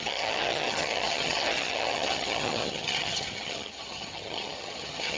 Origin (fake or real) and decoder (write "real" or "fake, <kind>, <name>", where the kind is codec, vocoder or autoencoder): fake, vocoder, HiFi-GAN